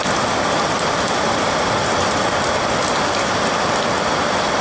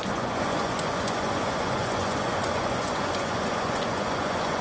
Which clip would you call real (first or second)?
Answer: first